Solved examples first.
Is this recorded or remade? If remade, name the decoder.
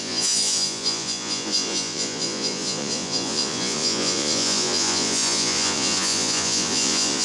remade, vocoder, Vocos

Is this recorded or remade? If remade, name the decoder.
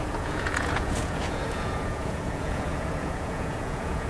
remade, vocoder, Vocos